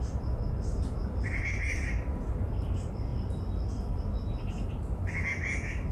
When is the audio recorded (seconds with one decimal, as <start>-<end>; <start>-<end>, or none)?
3.1-5.9